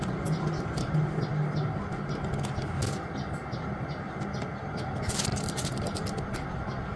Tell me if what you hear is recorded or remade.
recorded